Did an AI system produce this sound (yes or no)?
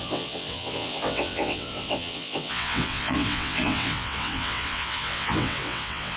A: yes